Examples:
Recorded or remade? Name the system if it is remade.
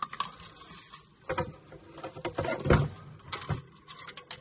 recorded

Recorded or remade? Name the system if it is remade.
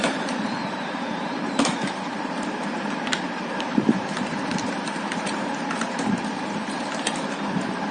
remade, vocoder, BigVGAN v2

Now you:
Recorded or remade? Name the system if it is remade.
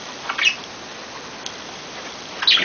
recorded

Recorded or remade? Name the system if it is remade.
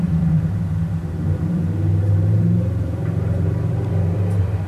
remade, vocoder, BigVGAN v2